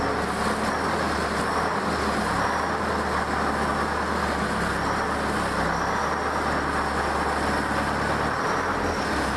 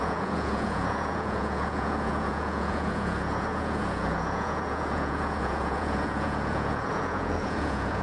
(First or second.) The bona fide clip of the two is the first